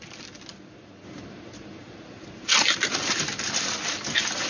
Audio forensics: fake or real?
fake